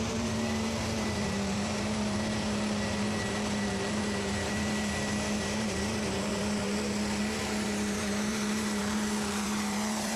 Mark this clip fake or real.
fake